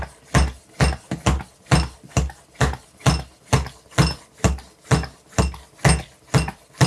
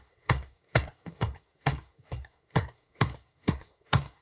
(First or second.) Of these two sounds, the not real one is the second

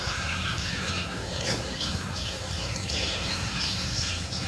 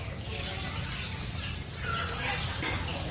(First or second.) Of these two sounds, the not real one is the first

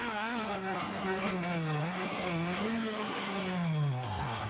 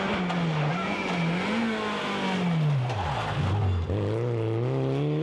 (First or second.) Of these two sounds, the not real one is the first